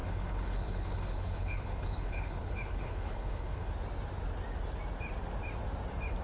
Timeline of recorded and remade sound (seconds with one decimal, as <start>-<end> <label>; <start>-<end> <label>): 0.0-3.7 remade; 3.7-6.2 recorded